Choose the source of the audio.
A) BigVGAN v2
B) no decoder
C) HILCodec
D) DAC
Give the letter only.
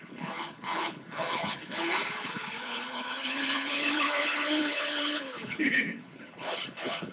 C